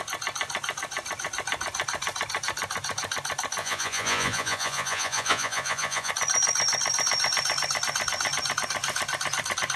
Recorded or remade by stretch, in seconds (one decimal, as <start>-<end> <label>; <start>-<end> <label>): 0.0-3.6 recorded; 3.6-6.1 remade; 6.1-9.8 recorded